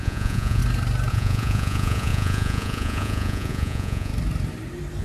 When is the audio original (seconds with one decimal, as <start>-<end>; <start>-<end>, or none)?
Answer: 0.6-1.1; 4.1-5.0